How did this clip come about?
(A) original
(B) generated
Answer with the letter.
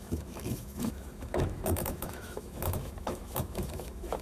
B